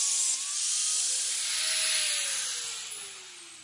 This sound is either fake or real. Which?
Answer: real